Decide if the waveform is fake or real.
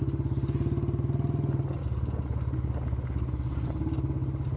real